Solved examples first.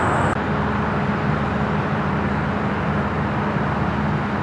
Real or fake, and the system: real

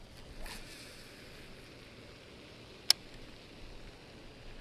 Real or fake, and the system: real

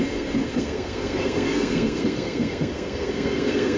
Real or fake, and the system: fake, codec, SNAC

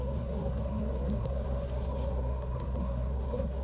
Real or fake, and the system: fake, codec, SNAC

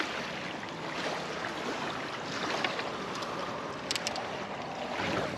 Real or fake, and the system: real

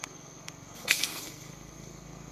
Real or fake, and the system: fake, codec, SNAC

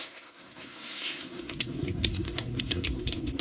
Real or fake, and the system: fake, codec, SNAC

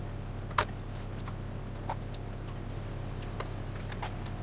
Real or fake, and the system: real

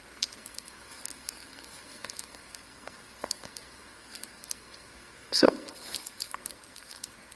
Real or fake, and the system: fake, codec, SNAC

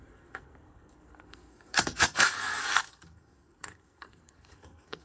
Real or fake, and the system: fake, codec, SNAC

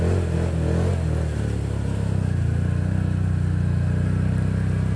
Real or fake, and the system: real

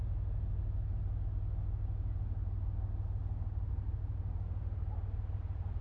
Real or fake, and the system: real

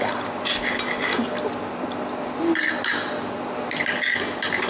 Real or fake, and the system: real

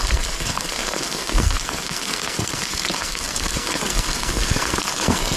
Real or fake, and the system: fake, codec, SNAC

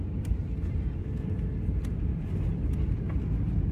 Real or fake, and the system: real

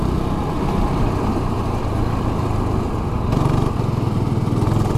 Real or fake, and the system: real